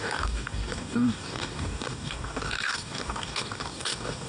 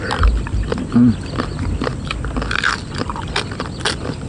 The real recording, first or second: second